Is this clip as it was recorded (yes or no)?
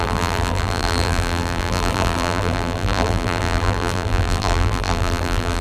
no